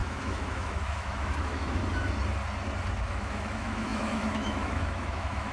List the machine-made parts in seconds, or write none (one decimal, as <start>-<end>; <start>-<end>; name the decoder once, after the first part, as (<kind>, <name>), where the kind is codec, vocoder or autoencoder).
0.0-1.8 (autoencoder, DAC-VAE); 3.1-5.5